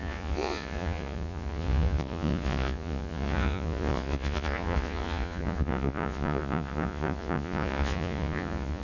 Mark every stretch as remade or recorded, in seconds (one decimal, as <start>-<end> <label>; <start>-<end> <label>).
0.0-8.8 remade